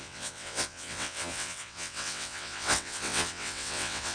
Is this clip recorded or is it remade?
remade